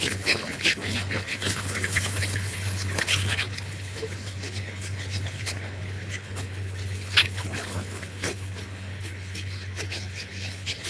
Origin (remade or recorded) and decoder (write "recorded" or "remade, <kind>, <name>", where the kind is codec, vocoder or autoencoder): remade, codec, HILCodec